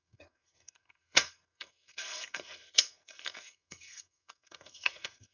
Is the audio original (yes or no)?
no